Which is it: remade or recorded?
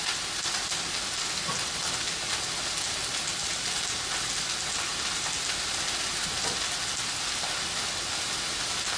recorded